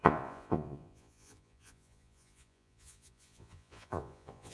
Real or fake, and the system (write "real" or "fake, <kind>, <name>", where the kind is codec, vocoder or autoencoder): fake, vocoder, Vocos